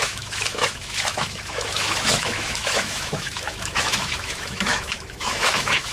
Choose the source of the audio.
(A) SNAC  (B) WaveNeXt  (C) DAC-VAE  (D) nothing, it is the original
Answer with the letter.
C